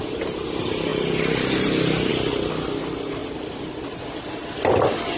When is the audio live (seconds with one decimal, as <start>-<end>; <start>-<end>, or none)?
0.0-5.2